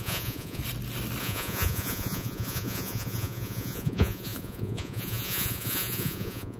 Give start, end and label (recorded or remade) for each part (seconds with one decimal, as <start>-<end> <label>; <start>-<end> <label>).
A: 0.0-0.6 remade; 0.6-1.2 recorded; 1.2-6.6 remade